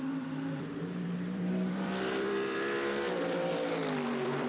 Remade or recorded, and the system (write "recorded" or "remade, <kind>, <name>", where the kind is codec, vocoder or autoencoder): remade, vocoder, BigVGAN v2